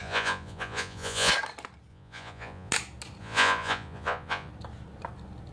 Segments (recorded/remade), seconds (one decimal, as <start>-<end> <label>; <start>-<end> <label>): 0.0-1.3 remade; 1.3-1.9 recorded; 1.9-2.7 remade; 2.7-3.2 recorded; 3.2-4.5 remade; 4.5-5.5 recorded